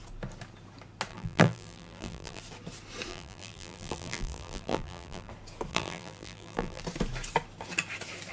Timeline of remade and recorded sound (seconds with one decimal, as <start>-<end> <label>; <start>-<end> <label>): 0.0-1.1 recorded; 1.1-2.4 remade; 2.4-3.1 recorded; 3.1-5.3 remade; 5.3-5.7 recorded; 5.7-6.8 remade; 6.8-8.3 recorded

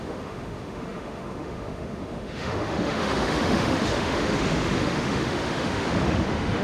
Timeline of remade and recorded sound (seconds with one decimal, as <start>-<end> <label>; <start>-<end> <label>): 0.0-6.6 remade

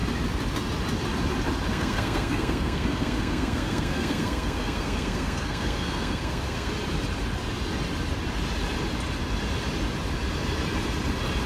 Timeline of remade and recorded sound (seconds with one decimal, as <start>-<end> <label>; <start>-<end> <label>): 0.0-1.7 recorded; 1.7-6.7 remade; 6.7-11.5 recorded